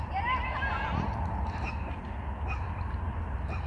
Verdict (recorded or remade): recorded